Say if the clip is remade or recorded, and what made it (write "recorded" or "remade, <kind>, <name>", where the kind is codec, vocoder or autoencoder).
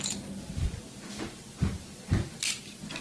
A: recorded